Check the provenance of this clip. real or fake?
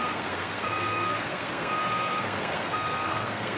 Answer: fake